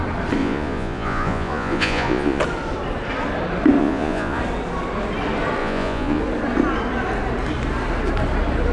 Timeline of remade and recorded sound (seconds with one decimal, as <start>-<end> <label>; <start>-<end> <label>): 0.0-0.4 recorded; 0.4-2.4 remade; 2.4-3.8 recorded; 3.8-4.4 remade; 4.4-5.6 recorded; 5.6-6.2 remade; 6.2-8.7 recorded